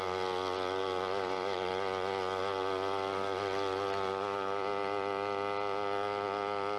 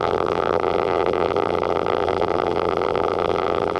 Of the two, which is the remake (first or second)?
second